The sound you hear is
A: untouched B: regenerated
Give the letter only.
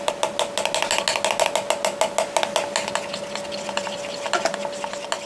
A